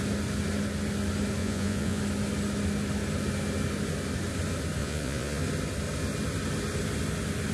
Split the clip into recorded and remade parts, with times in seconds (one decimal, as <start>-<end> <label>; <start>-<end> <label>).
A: 0.0-1.4 recorded; 1.4-2.0 remade; 2.0-4.8 recorded; 4.8-5.4 remade; 5.4-7.5 recorded